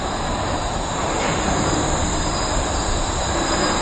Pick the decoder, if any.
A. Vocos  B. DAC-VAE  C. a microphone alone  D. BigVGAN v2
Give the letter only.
D